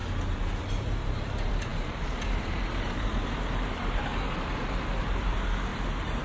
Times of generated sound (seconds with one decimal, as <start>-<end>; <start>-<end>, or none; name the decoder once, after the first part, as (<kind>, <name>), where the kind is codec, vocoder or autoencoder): 0.8-4.1 (vocoder, BigVGAN v2); 5.0-5.7